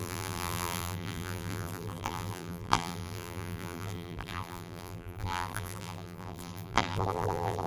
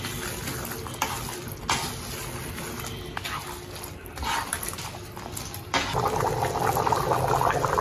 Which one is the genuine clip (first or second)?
second